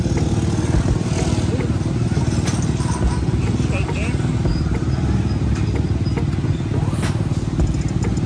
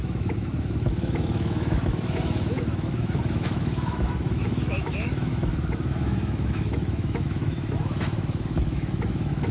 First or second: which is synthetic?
second